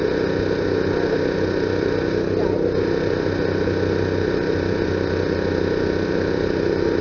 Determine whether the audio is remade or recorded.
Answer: recorded